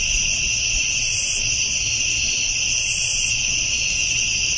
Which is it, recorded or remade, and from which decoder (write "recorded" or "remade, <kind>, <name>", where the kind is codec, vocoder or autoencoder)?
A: recorded